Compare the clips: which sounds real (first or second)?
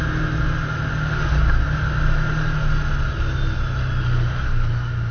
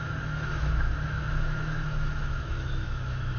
first